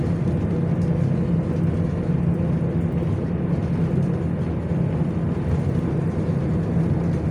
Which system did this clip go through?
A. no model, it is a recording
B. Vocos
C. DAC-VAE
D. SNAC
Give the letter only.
A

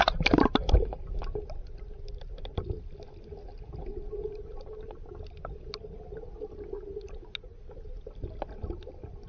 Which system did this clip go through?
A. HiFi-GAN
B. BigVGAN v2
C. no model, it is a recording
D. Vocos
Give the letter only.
C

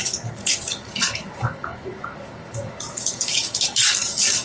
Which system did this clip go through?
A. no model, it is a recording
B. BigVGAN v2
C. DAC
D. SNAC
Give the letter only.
C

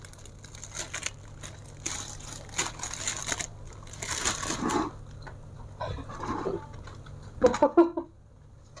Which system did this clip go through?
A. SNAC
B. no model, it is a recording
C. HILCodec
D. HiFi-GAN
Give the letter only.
B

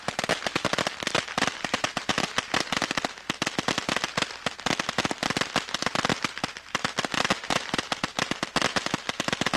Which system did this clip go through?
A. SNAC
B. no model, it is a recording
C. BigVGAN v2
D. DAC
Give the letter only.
B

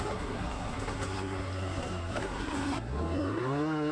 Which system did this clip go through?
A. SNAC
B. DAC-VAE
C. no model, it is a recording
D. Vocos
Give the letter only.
A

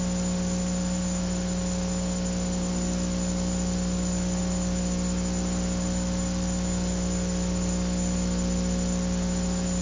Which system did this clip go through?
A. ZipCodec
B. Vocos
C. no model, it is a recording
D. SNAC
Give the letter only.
C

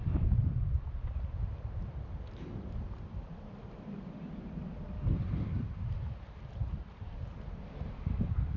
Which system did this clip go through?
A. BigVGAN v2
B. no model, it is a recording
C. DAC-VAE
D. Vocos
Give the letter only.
A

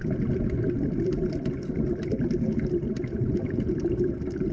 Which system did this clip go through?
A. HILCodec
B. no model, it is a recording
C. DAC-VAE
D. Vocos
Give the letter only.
B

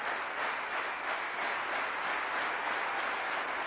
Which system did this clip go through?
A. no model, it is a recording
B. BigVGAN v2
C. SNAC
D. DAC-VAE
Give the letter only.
A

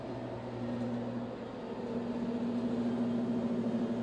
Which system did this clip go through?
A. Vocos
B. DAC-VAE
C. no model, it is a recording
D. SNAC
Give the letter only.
C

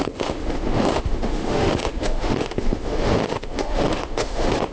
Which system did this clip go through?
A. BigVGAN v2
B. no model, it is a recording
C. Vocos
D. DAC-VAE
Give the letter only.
D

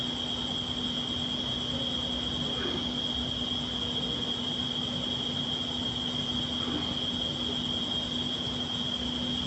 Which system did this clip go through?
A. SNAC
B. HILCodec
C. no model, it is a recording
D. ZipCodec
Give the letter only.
C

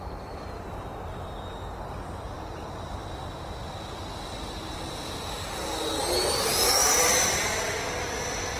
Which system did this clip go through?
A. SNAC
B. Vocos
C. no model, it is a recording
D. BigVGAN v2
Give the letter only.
C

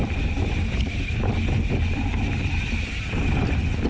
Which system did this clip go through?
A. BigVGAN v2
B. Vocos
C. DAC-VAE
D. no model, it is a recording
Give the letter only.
D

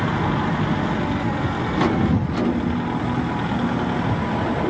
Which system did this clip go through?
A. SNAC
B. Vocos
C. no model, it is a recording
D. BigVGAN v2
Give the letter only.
C